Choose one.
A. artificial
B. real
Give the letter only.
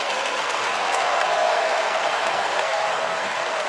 A